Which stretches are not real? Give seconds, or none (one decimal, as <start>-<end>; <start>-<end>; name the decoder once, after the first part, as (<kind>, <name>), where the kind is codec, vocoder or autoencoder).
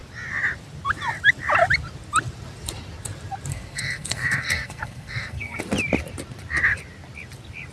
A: 3.5-5.6 (codec, SNAC)